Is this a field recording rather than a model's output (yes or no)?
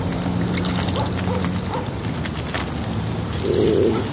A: yes